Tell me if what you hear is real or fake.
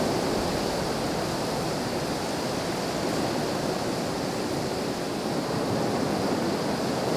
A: real